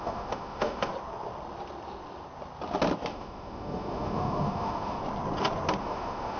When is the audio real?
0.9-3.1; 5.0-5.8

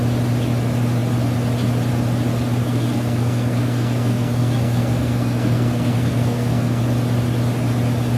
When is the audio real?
0.0-2.6; 6.8-8.2

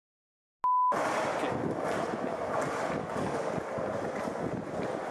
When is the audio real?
0.0-3.0; 3.5-5.1

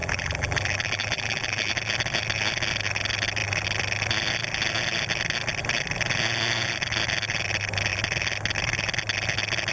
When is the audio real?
1.7-9.7

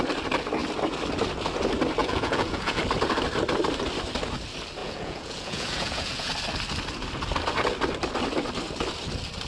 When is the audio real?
0.0-2.0; 2.8-4.8; 6.3-9.5

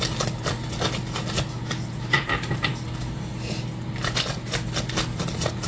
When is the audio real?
0.0-5.7

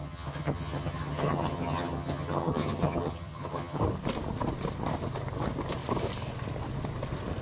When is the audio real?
3.8-7.4